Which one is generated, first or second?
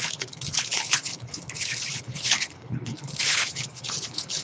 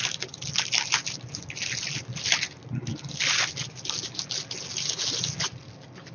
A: first